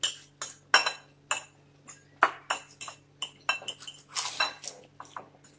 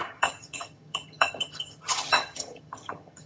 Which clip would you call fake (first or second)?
second